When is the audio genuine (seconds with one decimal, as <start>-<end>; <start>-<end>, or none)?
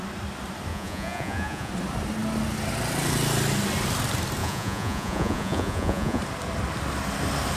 0.0-0.7; 1.7-4.4; 6.2-7.6